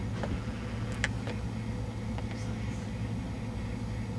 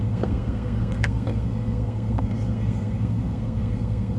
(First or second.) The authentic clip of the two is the first